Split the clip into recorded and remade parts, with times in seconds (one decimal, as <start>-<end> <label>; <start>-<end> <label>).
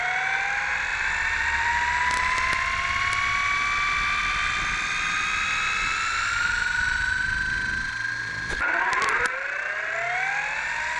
0.0-0.9 recorded; 0.9-1.7 remade; 1.7-4.2 recorded; 4.2-9.1 remade; 9.1-11.0 recorded